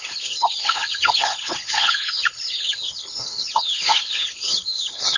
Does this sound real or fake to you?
fake